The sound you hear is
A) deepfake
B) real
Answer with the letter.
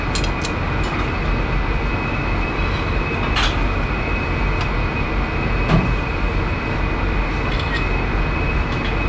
B